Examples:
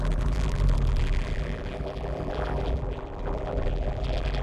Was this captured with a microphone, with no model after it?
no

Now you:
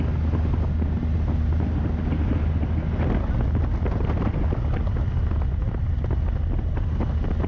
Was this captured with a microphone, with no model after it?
yes